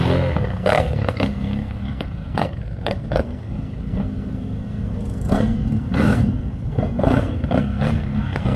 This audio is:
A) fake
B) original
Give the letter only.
A